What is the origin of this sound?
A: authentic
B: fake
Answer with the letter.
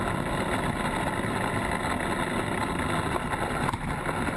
A